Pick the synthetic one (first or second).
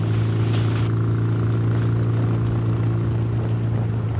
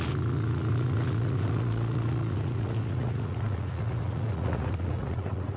second